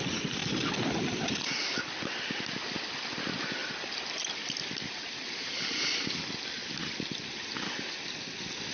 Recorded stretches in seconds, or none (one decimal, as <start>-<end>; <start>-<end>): 0.0-8.7